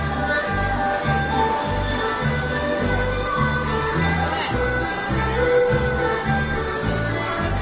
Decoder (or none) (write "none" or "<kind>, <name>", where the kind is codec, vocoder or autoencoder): none